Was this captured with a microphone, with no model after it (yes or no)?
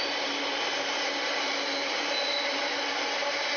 yes